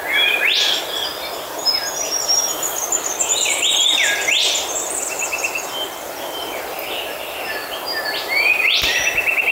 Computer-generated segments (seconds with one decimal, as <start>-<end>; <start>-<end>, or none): 0.0-1.1; 2.6-9.5